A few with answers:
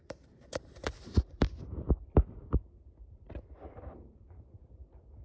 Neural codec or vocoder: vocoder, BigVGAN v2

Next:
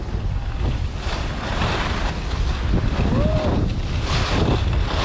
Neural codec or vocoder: none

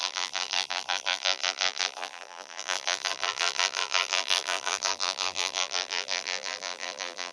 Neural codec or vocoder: vocoder, BigVGAN v2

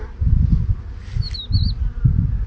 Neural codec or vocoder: none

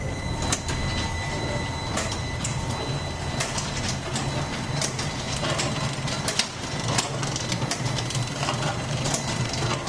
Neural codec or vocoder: none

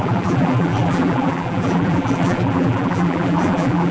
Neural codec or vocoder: vocoder, BigVGAN v2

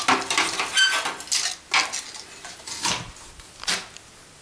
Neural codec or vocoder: none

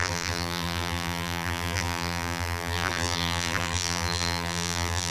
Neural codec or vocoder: vocoder, BigVGAN v2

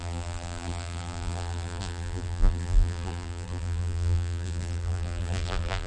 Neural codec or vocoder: vocoder, BigVGAN v2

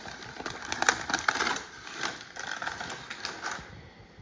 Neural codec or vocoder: none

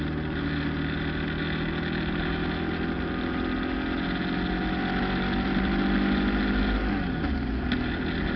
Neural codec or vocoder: none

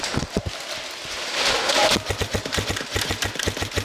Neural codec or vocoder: none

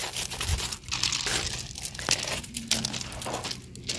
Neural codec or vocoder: none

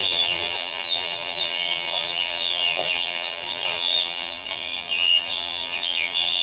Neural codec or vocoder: vocoder, BigVGAN v2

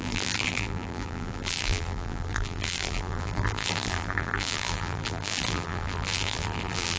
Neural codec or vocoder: vocoder, BigVGAN v2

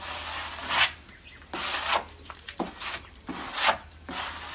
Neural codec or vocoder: none